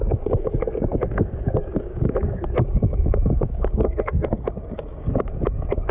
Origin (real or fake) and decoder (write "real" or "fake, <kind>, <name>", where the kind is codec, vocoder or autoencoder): fake, codec, DAC